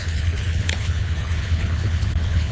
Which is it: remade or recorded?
remade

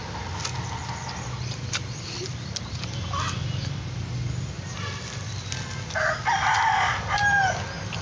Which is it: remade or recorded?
recorded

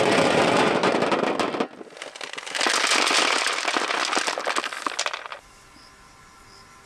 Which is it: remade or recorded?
recorded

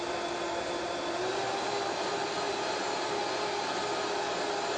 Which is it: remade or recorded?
recorded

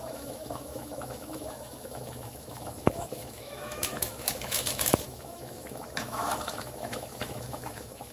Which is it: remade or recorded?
remade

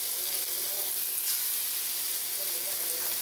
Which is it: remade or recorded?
recorded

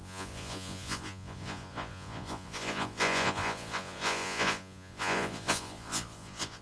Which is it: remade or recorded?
remade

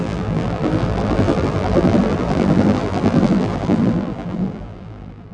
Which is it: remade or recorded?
remade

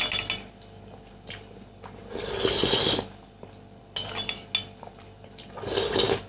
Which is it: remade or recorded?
recorded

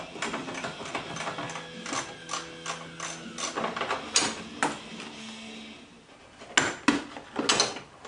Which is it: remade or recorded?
recorded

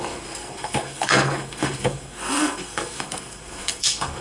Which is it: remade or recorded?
remade